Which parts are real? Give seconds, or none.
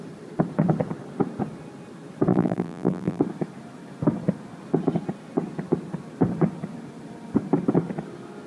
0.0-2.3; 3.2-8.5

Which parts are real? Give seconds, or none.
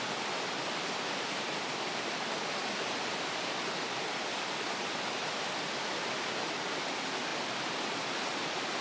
0.0-8.8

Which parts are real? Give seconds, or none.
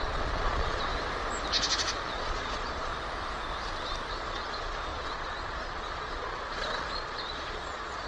0.9-1.8; 2.9-4.1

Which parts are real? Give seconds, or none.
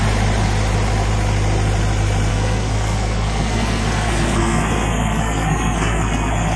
0.0-2.3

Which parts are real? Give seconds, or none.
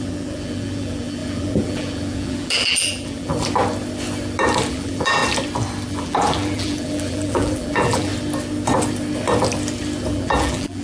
3.3-4.7; 5.2-5.9; 8.1-10.1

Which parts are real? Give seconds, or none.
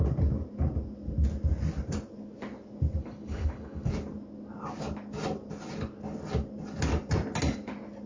0.0-3.0; 3.9-8.1